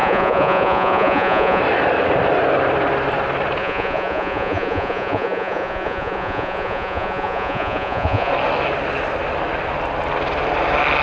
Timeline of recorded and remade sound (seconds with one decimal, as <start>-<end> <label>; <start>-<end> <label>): 0.0-1.6 remade; 1.6-3.6 recorded; 3.6-8.3 remade; 8.3-11.0 recorded